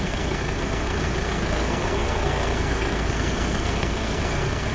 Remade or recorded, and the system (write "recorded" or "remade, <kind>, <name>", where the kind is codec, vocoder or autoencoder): remade, codec, SNAC